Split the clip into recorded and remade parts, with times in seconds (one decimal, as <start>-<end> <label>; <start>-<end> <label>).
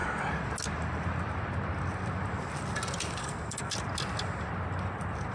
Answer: 0.0-3.2 recorded; 3.2-3.7 remade; 3.7-5.3 recorded